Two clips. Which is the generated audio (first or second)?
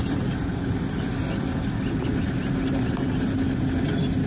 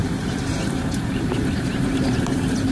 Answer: second